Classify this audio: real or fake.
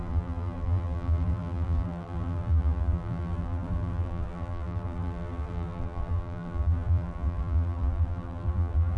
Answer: fake